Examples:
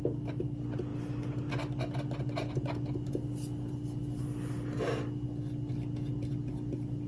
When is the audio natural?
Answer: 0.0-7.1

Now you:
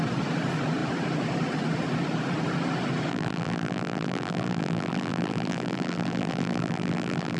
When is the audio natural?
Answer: 0.0-3.1

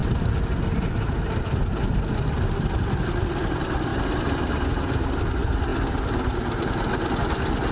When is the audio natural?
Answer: 0.0-7.7

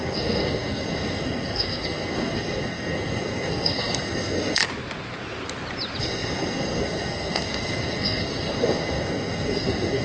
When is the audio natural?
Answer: 4.6-6.0

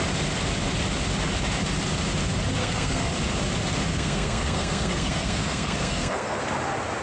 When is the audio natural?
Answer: 0.0-2.6; 3.1-3.9; 6.4-7.0

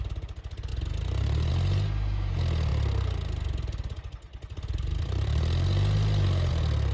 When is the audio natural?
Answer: 0.0-6.9

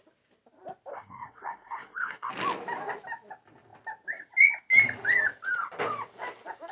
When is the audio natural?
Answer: 0.0-0.9; 2.3-6.7